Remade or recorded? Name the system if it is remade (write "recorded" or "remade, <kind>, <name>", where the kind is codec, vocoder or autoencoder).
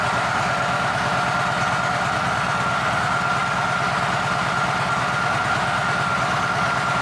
recorded